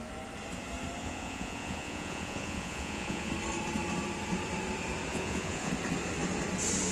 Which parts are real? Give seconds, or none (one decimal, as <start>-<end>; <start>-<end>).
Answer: 0.0-1.0; 3.3-5.1; 5.7-6.9